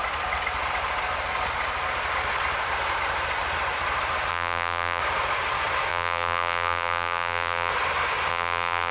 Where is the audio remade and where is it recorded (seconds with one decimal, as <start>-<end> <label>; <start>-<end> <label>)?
0.0-4.3 recorded; 4.3-5.0 remade; 5.0-5.9 recorded; 5.9-7.7 remade; 7.7-8.3 recorded; 8.3-8.9 remade